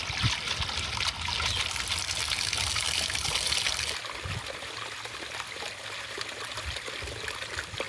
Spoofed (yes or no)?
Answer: no